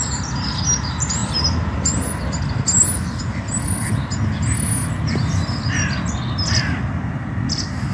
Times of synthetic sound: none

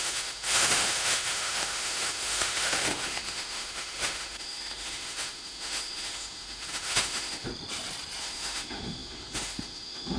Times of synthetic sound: 0.0-7.5 (autoencoder, DAC-VAE); 8.2-10.2

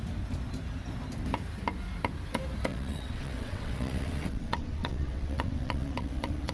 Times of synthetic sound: 2.7-6.5 (vocoder, WaveNeXt)